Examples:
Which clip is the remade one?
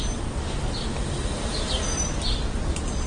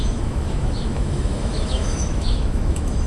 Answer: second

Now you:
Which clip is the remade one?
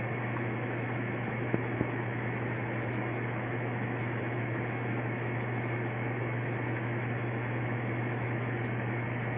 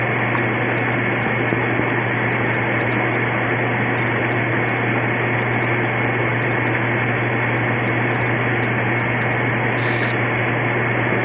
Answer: first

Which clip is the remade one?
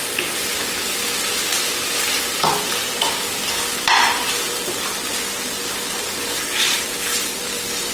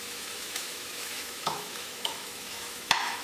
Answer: second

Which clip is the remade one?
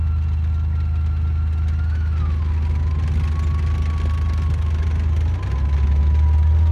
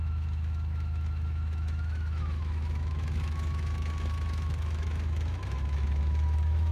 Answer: second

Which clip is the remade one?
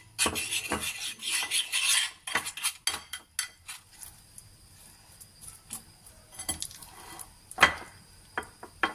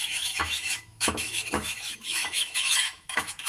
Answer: second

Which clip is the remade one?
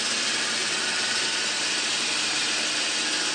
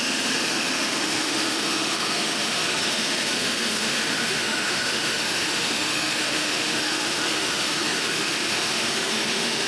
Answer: second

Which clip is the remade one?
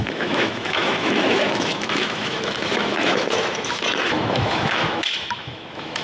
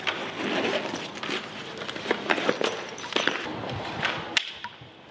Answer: first